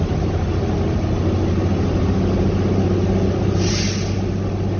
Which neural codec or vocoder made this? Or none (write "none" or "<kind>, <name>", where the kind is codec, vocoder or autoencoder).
none